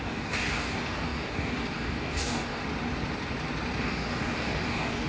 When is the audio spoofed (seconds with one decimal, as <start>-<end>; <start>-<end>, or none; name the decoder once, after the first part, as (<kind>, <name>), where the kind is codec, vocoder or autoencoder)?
0.0-2.6 (codec, DAC); 3.8-5.1